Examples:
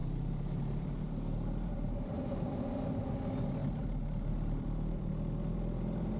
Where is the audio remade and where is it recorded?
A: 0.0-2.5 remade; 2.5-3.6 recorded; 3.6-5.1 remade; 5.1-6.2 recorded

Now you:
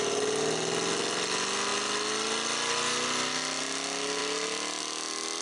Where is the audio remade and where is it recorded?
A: 0.0-5.4 recorded

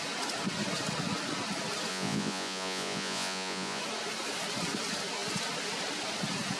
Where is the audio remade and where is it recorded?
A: 0.0-1.9 recorded; 1.9-3.8 remade; 3.8-6.6 recorded

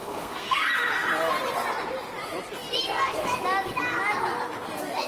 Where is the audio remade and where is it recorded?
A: 0.0-0.6 remade; 0.6-5.1 recorded

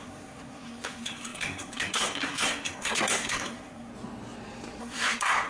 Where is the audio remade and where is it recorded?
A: 0.0-3.9 remade; 3.9-4.8 recorded; 4.8-5.5 remade